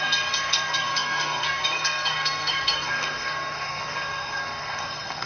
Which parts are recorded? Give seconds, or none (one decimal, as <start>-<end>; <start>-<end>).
none